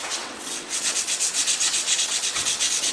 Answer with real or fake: fake